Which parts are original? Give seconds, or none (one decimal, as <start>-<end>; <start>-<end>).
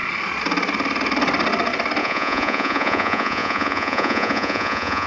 0.0-2.0